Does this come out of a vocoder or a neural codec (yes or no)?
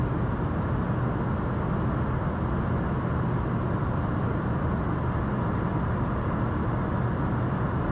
no